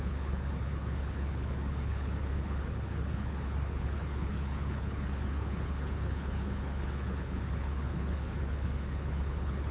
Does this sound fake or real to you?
fake